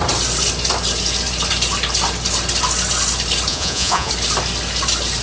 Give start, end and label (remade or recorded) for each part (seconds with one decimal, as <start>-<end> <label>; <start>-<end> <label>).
0.0-3.5 recorded; 3.5-4.1 remade; 4.1-5.2 recorded